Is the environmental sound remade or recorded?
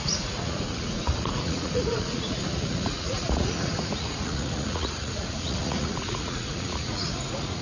remade